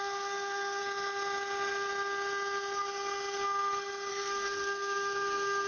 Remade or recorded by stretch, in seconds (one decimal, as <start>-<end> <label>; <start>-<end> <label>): 0.0-0.8 remade; 0.8-4.1 recorded; 4.1-5.7 remade